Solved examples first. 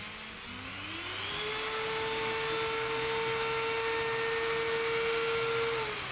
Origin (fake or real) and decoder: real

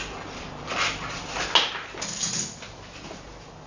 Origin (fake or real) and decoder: real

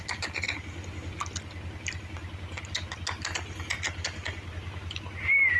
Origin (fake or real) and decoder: real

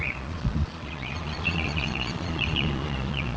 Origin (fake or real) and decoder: fake, vocoder, Vocos